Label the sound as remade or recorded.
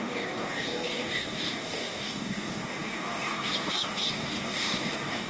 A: remade